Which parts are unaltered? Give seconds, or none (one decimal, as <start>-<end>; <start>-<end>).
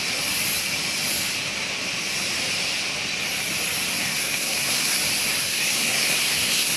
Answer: 0.0-3.9; 5.0-5.4